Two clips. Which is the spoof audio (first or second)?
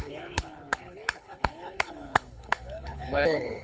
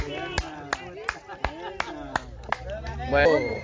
first